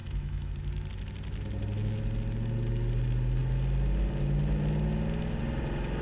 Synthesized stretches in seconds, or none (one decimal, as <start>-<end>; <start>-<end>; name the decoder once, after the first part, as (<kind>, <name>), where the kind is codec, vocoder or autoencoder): 0.0-0.5 (autoencoder, DAC-VAE)